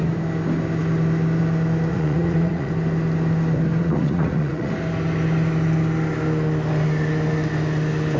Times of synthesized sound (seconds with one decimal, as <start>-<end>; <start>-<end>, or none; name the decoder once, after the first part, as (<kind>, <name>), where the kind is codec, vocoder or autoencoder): 1.9-2.7 (vocoder, Vocos); 3.8-4.7